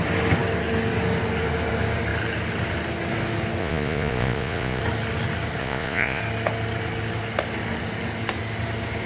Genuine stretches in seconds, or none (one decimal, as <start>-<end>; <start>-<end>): 0.0-3.6; 4.8-5.6; 6.2-9.1

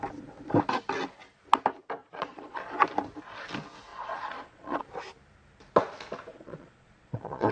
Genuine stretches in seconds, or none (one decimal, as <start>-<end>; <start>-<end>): 0.0-2.0; 2.6-3.9; 4.8-6.3

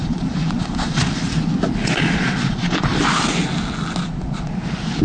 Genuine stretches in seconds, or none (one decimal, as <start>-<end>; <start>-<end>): 1.1-1.8; 3.0-4.0; 4.5-5.0

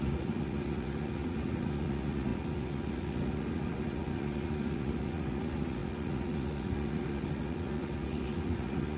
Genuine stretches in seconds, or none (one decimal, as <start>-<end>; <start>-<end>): none

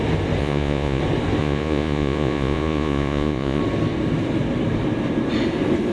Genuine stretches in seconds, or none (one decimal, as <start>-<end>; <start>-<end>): 0.0-0.4; 1.0-1.4; 3.6-5.9

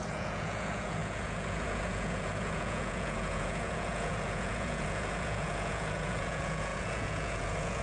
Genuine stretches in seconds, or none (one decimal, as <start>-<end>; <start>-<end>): none

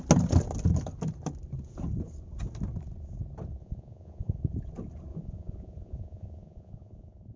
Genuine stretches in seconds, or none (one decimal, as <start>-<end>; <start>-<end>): 0.0-3.6; 4.4-5.1